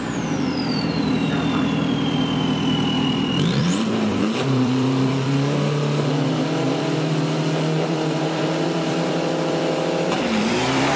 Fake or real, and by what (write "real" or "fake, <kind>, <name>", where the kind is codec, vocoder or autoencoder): fake, vocoder, BigVGAN v2